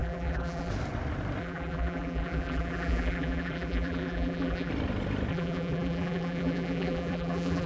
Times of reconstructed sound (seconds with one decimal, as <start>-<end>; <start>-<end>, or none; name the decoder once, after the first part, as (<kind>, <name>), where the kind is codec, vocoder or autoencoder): 0.0-0.7 (vocoder, BigVGAN v2); 1.4-4.7; 5.3-7.7